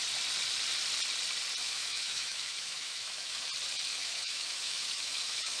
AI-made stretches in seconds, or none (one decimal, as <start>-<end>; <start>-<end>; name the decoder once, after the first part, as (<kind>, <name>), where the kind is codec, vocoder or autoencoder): 1.6-3.5 (autoencoder, DAC-VAE); 3.9-5.6